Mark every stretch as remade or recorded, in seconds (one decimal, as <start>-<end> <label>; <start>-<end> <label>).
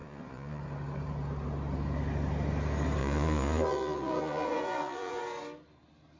0.0-0.6 remade; 0.6-3.0 recorded; 3.0-5.2 remade; 5.2-6.2 recorded